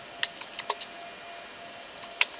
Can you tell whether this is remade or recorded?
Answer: recorded